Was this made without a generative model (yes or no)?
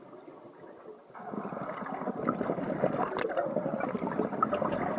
yes